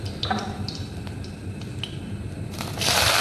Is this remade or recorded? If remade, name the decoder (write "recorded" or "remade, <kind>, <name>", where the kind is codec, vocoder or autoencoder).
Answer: remade, vocoder, BigVGAN v2